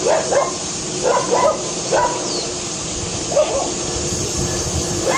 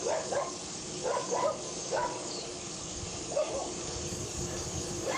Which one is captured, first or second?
first